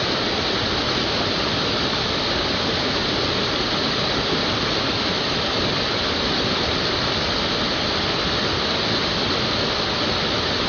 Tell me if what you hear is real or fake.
real